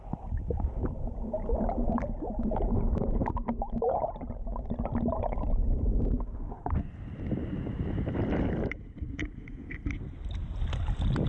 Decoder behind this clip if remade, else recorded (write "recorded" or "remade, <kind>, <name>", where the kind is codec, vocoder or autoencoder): remade, vocoder, BigVGAN v2